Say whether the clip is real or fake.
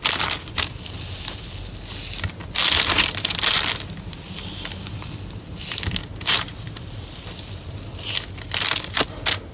real